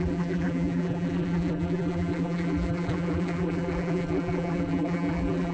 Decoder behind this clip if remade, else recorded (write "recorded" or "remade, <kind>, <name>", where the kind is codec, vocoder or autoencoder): remade, vocoder, BigVGAN v2